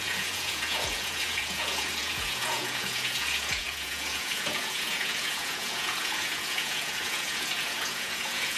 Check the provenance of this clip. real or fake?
fake